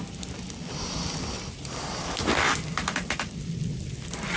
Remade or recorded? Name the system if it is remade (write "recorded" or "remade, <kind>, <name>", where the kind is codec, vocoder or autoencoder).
remade, vocoder, BigVGAN v2